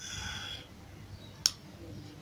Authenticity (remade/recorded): recorded